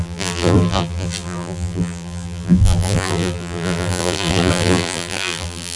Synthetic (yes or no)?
yes